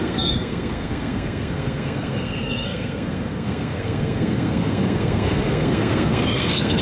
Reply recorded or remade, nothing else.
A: remade